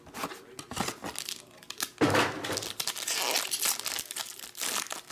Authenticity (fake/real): real